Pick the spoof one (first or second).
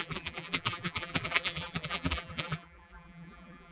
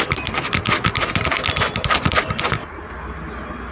first